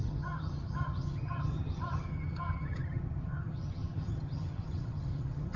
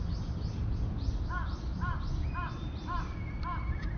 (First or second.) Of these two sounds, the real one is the second